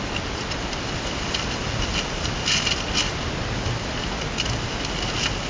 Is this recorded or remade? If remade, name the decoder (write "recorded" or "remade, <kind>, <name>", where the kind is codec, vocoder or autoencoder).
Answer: recorded